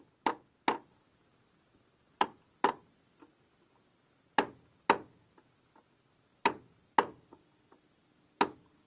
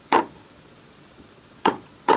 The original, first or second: first